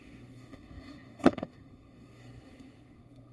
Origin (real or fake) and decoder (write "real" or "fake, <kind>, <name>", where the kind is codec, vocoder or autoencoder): fake, codec, SNAC